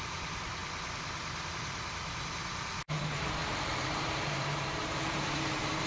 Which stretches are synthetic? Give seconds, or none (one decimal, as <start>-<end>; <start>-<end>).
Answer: 0.0-0.6; 1.5-5.9